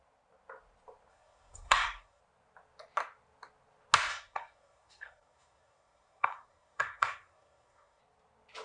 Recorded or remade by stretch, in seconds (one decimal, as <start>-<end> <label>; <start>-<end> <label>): 0.0-1.1 recorded; 1.1-2.2 remade; 2.2-4.1 recorded; 4.1-8.0 remade; 8.0-8.6 recorded